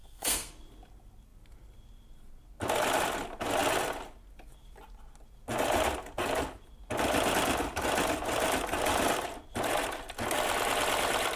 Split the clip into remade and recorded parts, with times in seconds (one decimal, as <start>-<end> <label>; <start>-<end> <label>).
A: 0.0-0.5 remade; 0.5-11.4 recorded